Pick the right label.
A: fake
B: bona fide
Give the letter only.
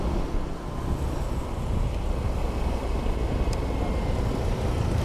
B